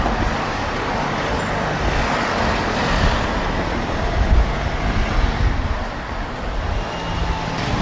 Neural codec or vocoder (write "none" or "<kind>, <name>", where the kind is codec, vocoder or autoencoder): none